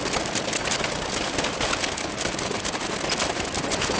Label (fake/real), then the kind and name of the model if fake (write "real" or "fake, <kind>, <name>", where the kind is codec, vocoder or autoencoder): real